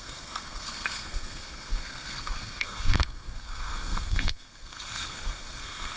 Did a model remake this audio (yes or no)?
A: yes